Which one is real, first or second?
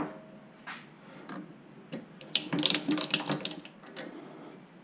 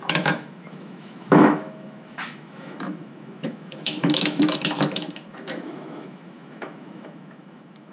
first